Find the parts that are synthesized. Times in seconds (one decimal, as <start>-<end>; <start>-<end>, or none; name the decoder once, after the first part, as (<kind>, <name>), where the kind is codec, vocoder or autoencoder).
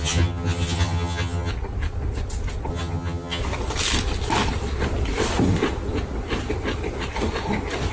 0.0-1.5 (vocoder, HiFi-GAN); 2.7-3.4